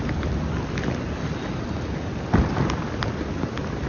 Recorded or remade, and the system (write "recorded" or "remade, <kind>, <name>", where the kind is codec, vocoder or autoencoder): remade, vocoder, BigVGAN v2